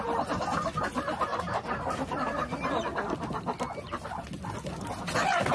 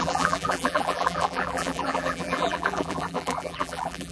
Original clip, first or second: first